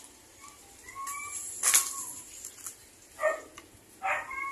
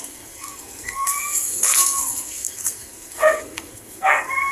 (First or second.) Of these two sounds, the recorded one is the first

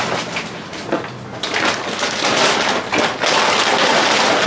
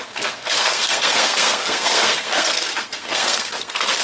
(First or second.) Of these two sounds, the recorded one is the first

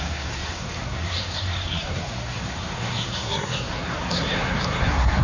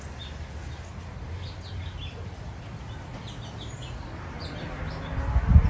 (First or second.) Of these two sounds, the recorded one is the second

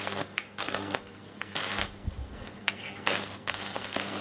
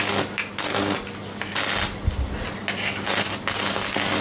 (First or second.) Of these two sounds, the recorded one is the second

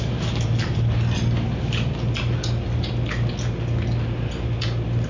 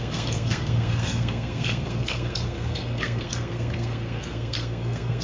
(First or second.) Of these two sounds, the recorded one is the first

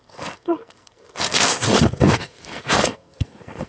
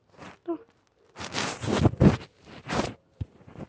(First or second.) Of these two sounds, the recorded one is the second